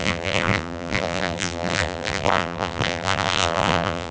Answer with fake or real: fake